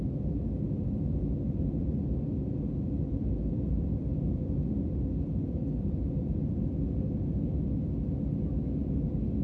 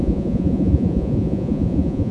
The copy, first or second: second